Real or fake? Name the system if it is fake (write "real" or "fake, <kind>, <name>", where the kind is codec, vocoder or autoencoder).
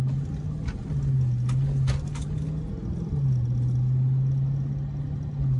real